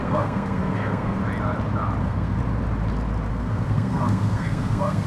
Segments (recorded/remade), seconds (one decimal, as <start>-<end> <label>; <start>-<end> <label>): 0.0-1.2 remade; 1.2-2.0 recorded; 2.0-2.4 remade; 2.4-3.3 recorded; 3.3-5.1 remade